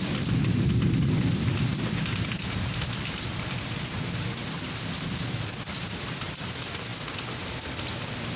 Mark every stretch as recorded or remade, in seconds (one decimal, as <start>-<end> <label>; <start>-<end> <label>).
0.0-8.4 recorded